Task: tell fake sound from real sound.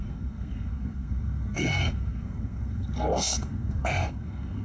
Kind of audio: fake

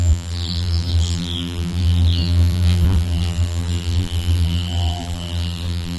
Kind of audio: fake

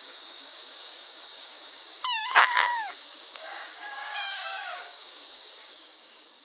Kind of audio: fake